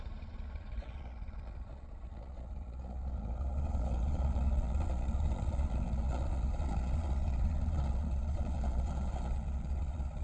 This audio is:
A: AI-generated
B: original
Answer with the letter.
A